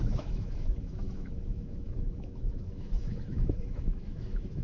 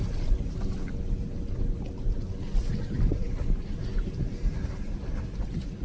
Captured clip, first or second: second